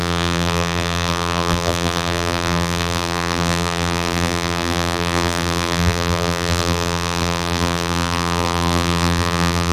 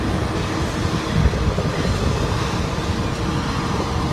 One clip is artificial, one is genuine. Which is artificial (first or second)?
first